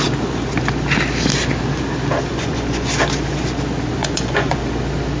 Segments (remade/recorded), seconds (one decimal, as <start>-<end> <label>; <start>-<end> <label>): 0.0-2.3 recorded; 2.3-2.9 remade; 2.9-4.0 recorded; 4.0-4.6 remade; 4.6-5.2 recorded